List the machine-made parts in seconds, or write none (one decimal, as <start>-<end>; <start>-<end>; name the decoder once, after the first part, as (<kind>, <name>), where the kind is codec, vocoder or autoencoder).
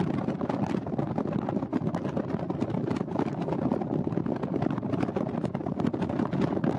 none